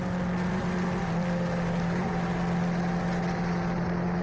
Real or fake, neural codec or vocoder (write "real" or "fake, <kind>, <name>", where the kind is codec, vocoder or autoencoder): real